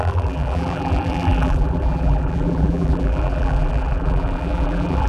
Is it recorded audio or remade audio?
remade